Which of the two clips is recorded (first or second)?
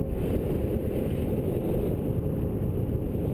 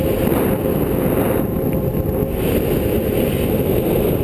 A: second